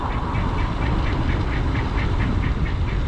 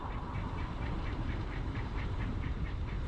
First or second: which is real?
first